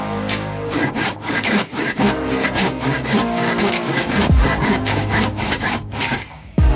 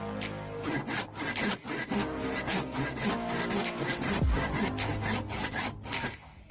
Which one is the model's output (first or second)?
first